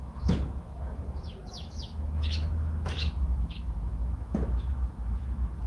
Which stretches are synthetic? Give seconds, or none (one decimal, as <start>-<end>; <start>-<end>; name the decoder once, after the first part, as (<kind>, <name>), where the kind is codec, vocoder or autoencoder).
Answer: 0.0-5.7 (autoencoder, DAC-VAE)